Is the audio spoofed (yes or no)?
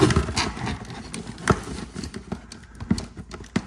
no